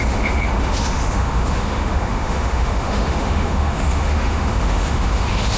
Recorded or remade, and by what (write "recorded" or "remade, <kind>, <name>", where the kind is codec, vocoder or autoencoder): remade, autoencoder, DAC-VAE